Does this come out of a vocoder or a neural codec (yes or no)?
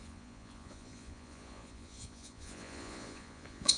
yes